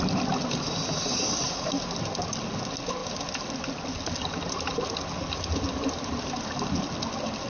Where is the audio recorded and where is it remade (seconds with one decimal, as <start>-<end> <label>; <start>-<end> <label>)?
0.0-7.5 recorded